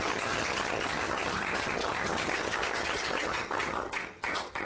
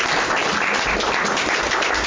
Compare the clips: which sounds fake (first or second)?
first